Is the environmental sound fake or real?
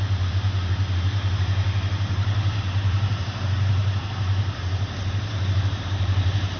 fake